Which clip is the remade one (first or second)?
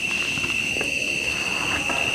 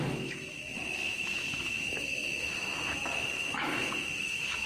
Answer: second